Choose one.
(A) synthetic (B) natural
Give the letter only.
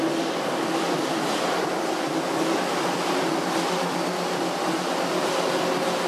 B